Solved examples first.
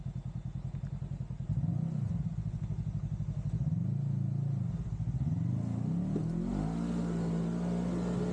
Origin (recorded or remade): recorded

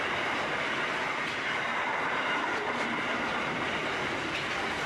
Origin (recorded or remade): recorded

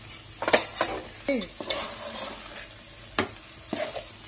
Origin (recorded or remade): recorded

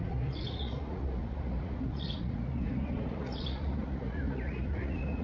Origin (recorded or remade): remade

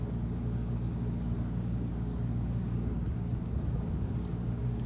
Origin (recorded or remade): remade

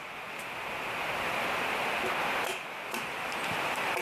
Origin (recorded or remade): recorded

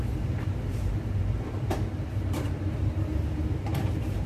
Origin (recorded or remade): remade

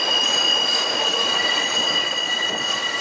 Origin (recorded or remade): recorded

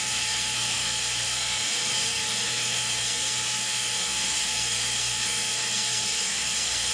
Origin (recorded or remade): remade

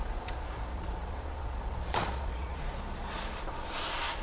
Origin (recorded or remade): remade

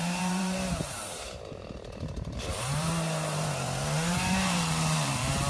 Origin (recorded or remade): remade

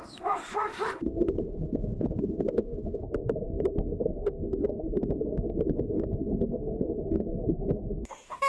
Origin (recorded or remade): remade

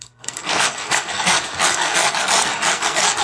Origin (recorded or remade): remade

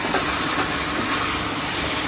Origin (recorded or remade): recorded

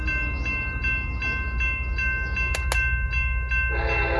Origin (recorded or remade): recorded